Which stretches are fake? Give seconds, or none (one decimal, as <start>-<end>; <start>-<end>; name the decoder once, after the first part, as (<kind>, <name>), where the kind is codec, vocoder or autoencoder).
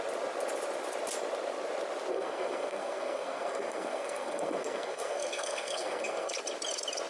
2.1-6.3 (codec, SNAC)